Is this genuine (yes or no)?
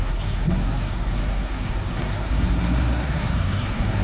no